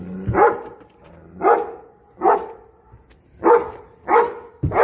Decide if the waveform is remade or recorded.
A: recorded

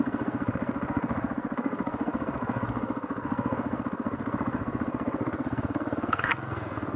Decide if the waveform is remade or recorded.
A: remade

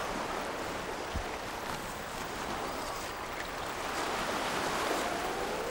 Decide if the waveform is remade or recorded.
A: remade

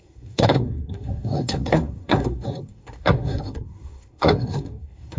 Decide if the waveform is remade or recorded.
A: remade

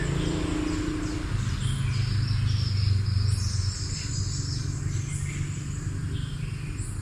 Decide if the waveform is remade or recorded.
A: recorded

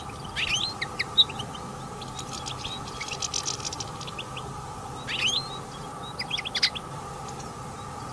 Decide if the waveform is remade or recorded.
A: recorded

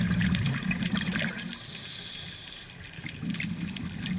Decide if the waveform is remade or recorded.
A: recorded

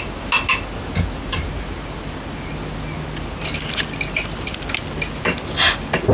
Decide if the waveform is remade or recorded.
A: recorded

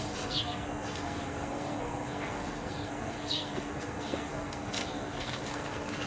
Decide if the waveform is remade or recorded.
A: remade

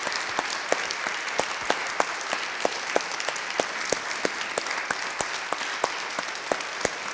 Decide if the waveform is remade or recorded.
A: recorded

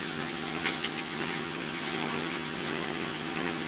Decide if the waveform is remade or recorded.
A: remade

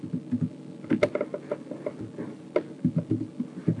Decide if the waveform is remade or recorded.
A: recorded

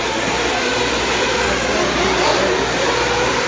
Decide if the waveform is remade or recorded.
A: recorded